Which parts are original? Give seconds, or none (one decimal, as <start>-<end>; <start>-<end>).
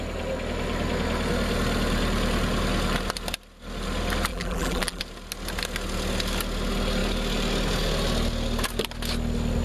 0.0-4.3; 5.0-9.6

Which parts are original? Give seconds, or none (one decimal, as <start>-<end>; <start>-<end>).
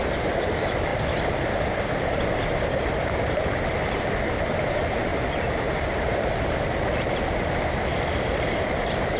0.0-0.9; 3.0-9.2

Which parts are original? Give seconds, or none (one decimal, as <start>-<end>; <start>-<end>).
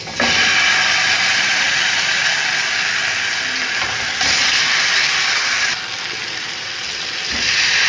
0.0-7.9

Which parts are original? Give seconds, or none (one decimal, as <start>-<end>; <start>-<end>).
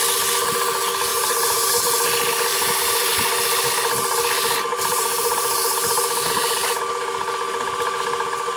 0.0-1.1; 1.7-2.5; 3.1-4.7; 6.8-8.6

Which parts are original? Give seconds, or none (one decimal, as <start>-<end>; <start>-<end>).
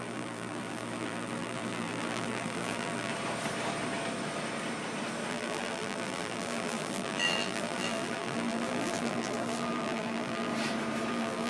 3.1-5.3; 10.5-11.1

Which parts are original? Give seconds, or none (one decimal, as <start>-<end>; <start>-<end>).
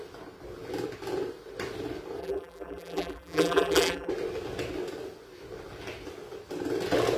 0.0-2.2; 4.1-7.2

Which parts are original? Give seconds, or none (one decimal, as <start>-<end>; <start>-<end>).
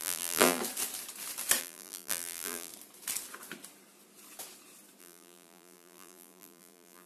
0.6-1.6; 2.7-5.0